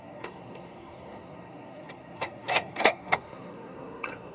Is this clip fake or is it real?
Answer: fake